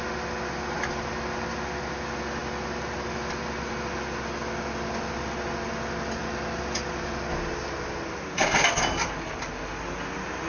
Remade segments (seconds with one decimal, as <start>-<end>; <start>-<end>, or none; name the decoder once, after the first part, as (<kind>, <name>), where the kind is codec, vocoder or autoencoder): none